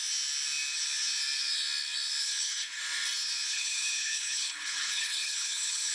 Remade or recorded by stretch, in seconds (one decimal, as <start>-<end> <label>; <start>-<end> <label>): 0.0-2.2 recorded; 2.2-2.8 remade; 2.8-3.5 recorded; 3.5-5.9 remade